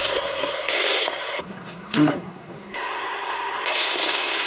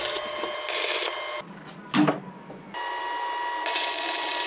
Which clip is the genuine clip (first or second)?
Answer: second